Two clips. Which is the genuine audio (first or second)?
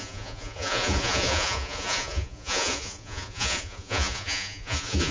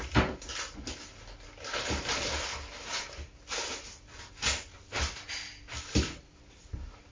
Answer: second